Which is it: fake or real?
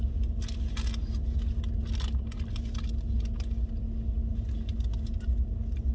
real